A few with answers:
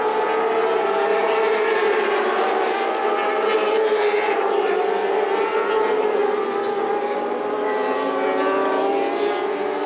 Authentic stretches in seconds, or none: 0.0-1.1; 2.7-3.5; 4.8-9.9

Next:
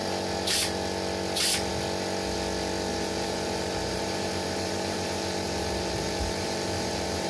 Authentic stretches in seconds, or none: 0.0-2.9

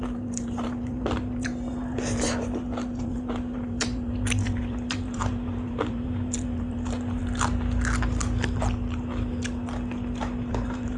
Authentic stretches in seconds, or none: 7.2-10.5

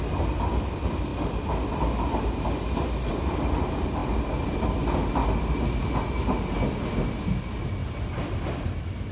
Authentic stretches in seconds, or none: 0.0-9.1

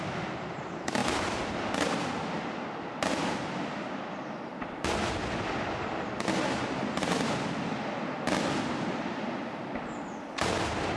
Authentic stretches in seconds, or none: 0.0-11.0